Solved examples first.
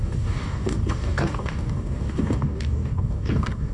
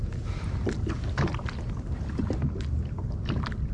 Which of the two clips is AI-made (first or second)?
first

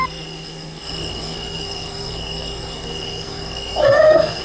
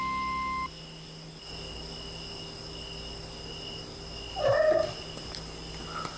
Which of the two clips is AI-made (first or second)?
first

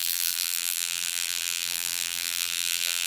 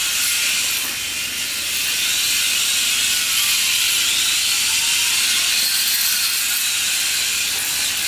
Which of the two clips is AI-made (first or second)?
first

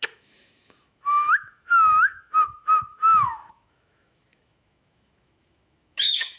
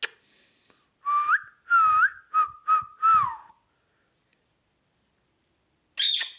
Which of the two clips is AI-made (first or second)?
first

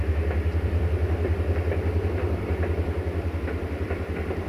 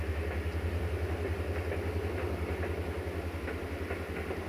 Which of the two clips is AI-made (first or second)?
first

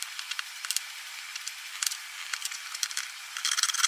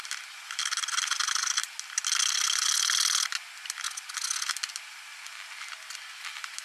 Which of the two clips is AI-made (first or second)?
first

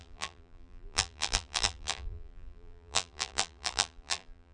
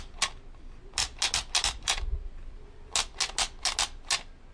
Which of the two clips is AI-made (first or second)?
first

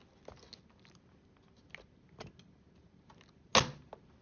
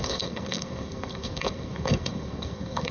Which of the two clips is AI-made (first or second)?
second